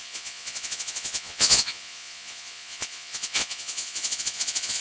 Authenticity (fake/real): fake